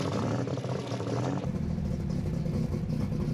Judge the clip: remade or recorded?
recorded